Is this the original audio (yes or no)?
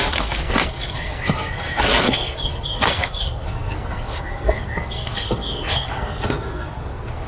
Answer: no